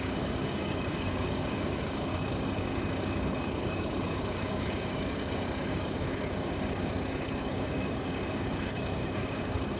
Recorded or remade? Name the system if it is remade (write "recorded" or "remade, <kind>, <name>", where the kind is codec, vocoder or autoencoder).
remade, codec, DAC